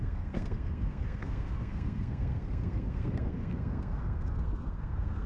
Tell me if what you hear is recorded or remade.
remade